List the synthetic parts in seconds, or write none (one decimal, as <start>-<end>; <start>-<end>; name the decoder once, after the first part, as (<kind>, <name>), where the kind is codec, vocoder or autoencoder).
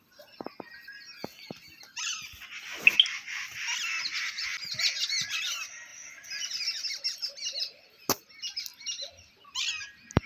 none